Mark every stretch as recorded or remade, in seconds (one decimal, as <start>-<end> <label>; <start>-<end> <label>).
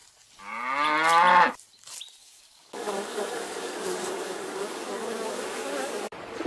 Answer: 0.0-2.2 recorded; 2.2-6.1 remade; 6.1-6.5 recorded